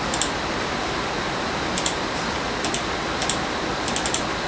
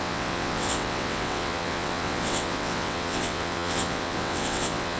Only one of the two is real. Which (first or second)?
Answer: first